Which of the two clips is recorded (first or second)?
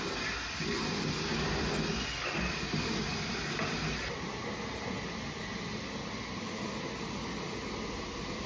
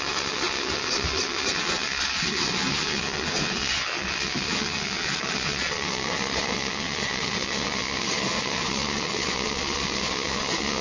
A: first